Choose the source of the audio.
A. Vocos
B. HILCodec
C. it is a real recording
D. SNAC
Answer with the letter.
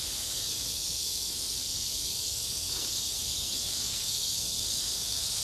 D